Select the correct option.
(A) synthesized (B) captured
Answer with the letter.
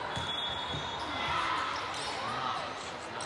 B